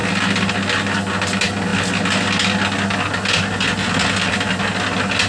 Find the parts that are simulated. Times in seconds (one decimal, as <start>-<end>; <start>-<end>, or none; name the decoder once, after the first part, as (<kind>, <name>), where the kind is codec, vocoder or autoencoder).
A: none